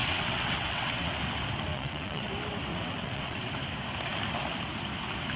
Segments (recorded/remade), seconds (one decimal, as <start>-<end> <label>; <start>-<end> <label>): 0.0-1.1 remade; 1.1-1.7 recorded; 1.7-2.3 remade; 2.3-2.7 recorded; 2.7-3.5 remade; 3.5-5.4 recorded